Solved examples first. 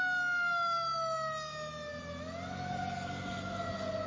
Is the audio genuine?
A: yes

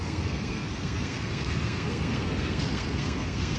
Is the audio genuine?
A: no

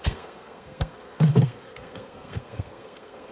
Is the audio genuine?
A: no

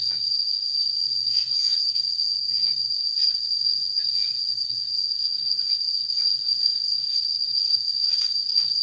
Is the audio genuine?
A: no